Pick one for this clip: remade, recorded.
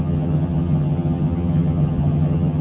remade